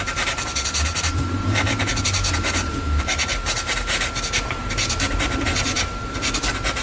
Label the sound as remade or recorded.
remade